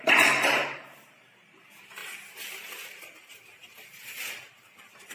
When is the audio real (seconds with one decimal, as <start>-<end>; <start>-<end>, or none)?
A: 2.0-3.0